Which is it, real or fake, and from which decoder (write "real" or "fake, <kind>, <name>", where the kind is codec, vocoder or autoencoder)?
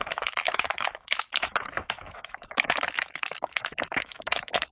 fake, autoencoder, DAC-VAE